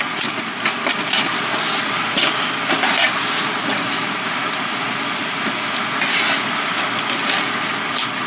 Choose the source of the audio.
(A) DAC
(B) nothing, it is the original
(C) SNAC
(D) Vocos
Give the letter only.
B